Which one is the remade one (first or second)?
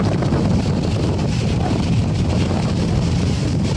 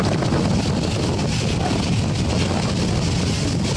first